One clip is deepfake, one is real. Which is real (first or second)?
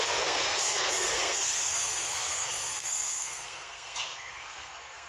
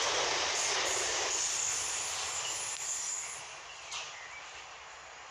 second